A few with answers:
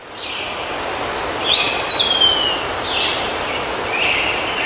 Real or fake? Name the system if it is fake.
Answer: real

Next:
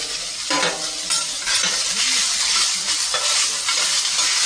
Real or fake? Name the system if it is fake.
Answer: real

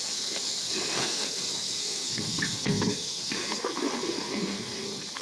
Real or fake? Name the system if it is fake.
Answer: fake, codec, SNAC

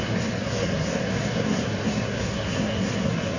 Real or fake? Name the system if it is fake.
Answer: fake, codec, SNAC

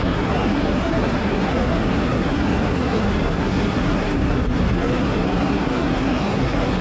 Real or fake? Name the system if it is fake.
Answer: fake, codec, SNAC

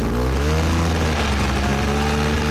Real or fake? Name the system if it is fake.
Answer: real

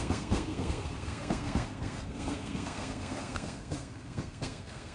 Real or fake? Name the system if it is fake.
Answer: fake, codec, SNAC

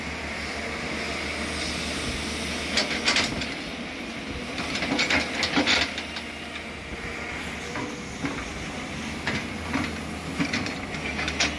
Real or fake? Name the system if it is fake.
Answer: real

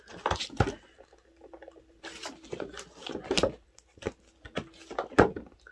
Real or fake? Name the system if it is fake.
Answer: real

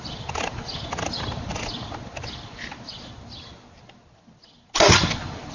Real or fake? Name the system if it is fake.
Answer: real